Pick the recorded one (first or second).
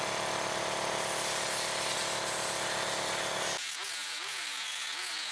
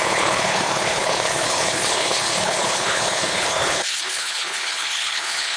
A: first